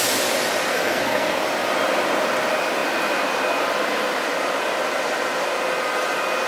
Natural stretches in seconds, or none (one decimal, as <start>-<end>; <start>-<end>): 0.0-0.7; 1.4-6.5

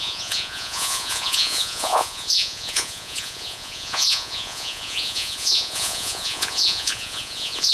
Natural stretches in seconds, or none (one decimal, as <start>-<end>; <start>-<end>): none

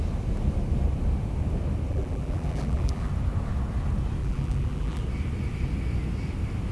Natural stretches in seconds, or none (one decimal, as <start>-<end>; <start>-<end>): 0.0-1.9; 3.1-4.2; 5.0-6.7

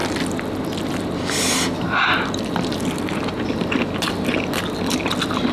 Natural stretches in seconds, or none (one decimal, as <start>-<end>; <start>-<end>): 0.0-5.5

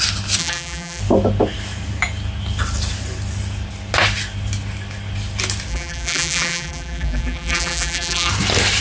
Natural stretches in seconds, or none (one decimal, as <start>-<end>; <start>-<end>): 0.0-0.4; 1.0-5.7; 8.3-8.8

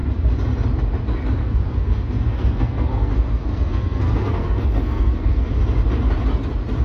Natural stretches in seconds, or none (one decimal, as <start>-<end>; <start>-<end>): 0.0-1.4; 5.5-6.8